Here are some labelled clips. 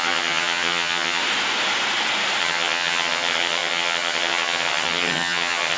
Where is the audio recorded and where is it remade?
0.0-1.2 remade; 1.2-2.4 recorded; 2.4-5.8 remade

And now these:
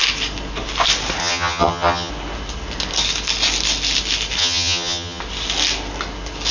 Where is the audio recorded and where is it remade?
0.0-1.2 recorded; 1.2-2.1 remade; 2.1-4.4 recorded; 4.4-5.2 remade; 5.2-6.5 recorded